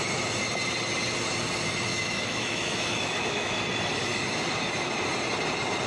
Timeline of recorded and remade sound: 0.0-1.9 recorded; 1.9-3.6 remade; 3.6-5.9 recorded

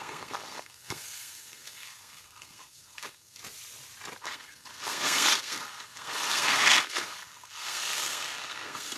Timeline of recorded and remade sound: 0.0-3.4 remade; 3.4-4.2 recorded; 4.2-9.0 remade

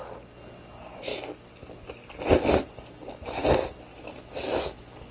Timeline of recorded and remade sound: 0.0-3.9 recorded; 3.9-5.1 remade

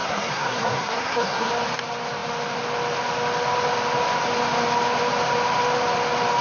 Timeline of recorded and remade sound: 0.0-1.5 remade; 1.5-6.4 recorded

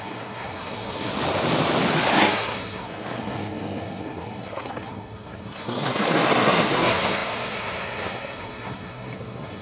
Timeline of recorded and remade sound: 0.0-1.1 remade; 1.1-2.1 recorded; 2.1-9.6 remade

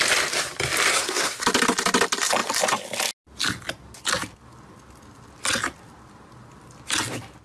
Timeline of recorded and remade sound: 0.0-0.9 recorded; 0.9-1.4 remade; 1.4-7.4 recorded

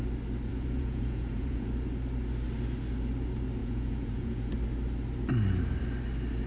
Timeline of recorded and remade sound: 0.0-0.5 recorded; 0.5-1.7 remade; 1.7-3.6 recorded; 3.6-4.5 remade; 4.5-6.5 recorded